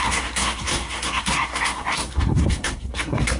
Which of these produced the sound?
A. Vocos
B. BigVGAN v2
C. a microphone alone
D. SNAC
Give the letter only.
D